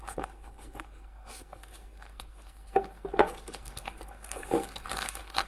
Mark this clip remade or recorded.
remade